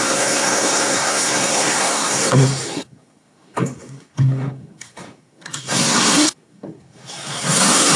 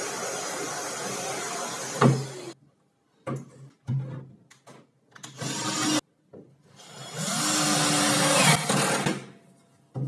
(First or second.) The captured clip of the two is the second